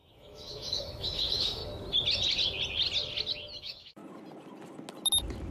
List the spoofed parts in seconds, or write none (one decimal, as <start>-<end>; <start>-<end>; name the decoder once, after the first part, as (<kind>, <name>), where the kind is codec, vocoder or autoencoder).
0.0-1.6 (autoencoder, DAC-VAE); 3.6-4.0